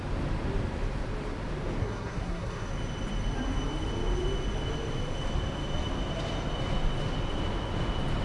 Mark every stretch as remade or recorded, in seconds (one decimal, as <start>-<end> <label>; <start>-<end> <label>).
0.0-1.8 recorded; 1.8-2.7 remade; 2.7-8.2 recorded